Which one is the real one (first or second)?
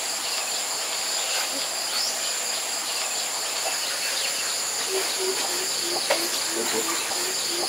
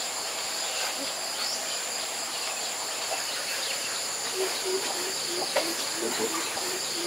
first